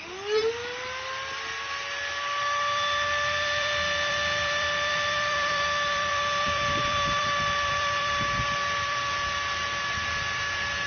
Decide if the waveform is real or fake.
fake